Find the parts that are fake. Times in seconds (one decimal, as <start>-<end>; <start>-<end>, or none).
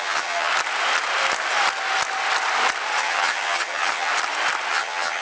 0.0-0.5; 3.0-4.1; 4.7-5.2